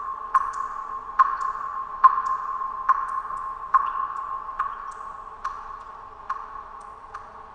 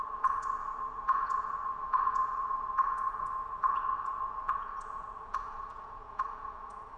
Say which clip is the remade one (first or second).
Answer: second